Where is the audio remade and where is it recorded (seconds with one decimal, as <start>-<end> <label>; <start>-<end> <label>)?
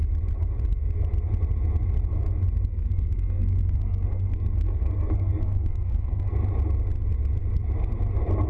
0.0-2.7 recorded; 2.7-6.3 remade; 6.3-8.5 recorded